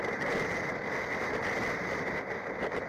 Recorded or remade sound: recorded